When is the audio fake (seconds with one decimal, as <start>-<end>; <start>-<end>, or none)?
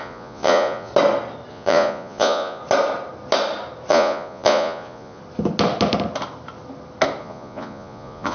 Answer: 0.0-0.9; 1.5-2.6; 3.9-5.2; 7.2-8.3